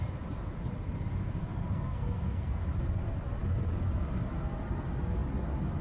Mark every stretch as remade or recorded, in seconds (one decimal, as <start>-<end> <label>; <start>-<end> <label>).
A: 0.0-1.4 recorded; 1.4-2.6 remade; 2.6-5.8 recorded